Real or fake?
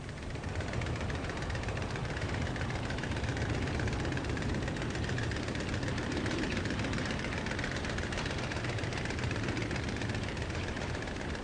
fake